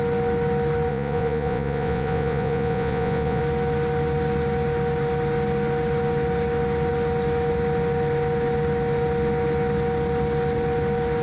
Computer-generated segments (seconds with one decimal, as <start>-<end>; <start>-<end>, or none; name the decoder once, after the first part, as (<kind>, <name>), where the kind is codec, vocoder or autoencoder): 0.9-3.4 (vocoder, Vocos)